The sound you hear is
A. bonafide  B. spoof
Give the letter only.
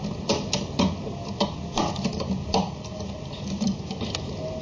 A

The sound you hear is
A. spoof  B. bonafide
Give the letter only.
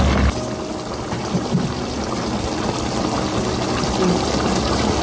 B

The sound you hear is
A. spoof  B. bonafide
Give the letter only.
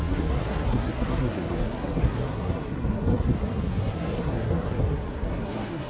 A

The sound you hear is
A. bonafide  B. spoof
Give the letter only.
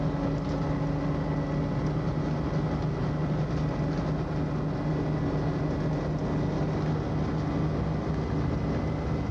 A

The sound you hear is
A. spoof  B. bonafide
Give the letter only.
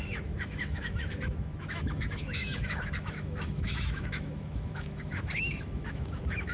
A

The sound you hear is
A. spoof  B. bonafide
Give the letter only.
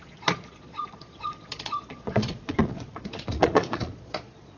A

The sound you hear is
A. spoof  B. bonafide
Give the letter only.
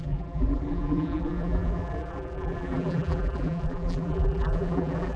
A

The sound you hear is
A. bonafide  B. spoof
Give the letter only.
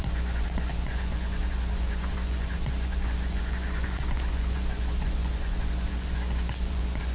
B